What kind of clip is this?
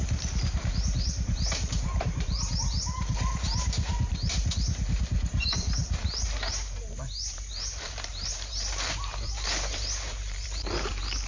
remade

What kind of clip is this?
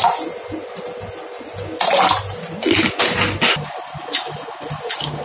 recorded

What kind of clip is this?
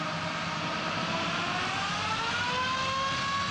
recorded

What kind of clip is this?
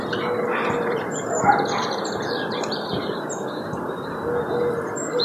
recorded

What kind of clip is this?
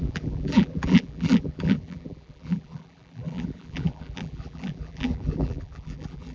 remade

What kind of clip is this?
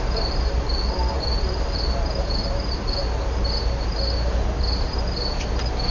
remade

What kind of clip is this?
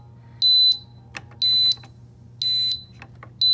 recorded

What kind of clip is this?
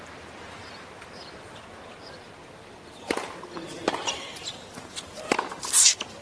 recorded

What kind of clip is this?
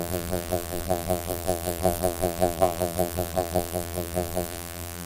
remade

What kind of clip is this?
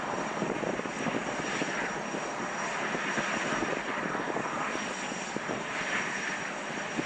recorded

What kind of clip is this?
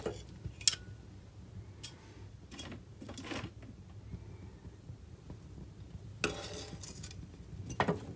recorded